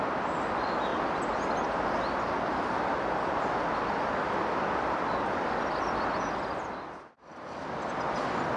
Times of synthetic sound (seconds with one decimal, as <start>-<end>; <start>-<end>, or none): none